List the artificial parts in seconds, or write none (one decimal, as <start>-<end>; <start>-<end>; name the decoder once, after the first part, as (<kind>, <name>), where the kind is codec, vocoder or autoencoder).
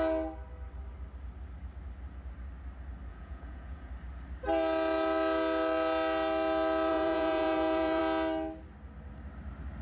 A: 3.1-3.9 (vocoder, Vocos); 6.9-8.0